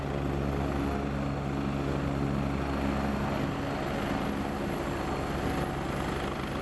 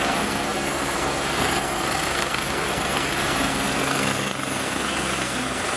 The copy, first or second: second